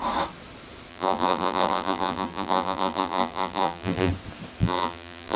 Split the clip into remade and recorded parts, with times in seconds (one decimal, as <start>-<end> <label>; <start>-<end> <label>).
0.0-0.9 recorded; 0.9-4.1 remade; 4.1-4.6 recorded; 4.6-5.4 remade